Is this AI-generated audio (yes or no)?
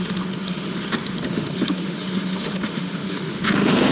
yes